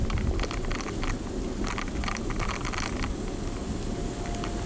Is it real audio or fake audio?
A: real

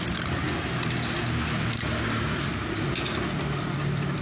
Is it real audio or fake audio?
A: real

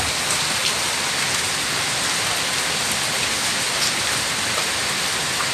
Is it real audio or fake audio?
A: real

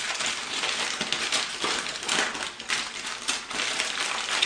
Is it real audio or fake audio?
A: real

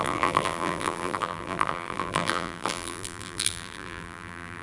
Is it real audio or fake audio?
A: fake